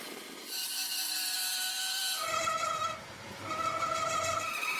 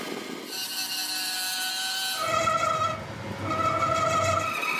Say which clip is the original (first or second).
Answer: second